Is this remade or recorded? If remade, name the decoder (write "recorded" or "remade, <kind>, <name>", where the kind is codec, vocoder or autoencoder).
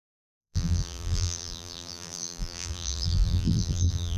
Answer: remade, vocoder, BigVGAN v2